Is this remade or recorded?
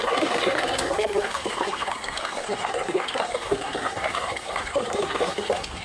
remade